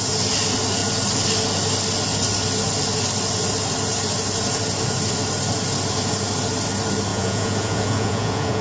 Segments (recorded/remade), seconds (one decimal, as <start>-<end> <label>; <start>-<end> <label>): 0.0-7.1 recorded; 7.1-8.6 remade